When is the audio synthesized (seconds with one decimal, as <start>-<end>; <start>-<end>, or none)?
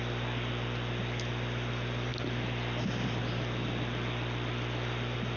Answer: none